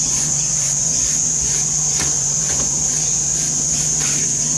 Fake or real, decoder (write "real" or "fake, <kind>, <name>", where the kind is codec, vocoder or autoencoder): fake, vocoder, Vocos